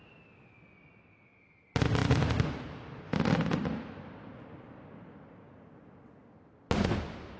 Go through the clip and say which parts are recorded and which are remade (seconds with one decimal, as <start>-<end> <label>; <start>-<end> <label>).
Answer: 0.0-7.4 recorded